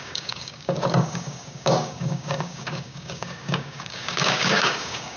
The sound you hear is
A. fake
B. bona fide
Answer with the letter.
A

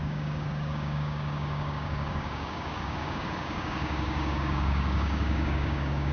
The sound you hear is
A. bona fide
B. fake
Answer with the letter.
B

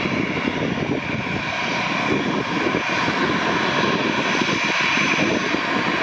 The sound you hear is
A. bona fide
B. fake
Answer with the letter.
A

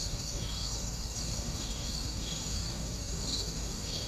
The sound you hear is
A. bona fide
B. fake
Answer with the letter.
B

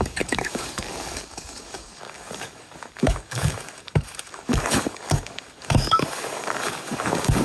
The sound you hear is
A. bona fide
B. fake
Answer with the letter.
B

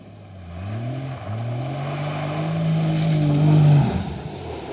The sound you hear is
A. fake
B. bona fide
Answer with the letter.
B